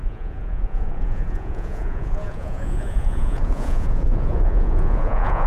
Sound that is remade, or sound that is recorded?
remade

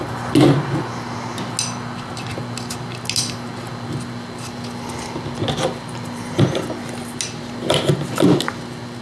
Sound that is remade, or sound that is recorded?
recorded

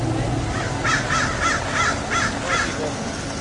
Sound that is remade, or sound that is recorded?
recorded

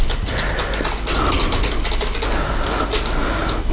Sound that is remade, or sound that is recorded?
recorded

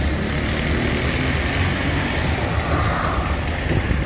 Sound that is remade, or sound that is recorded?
recorded